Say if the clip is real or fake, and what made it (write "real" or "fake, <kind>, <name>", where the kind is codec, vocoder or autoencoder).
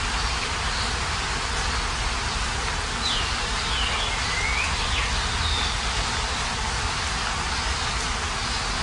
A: real